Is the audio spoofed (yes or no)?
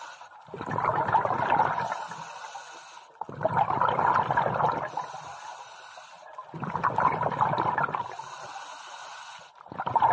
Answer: no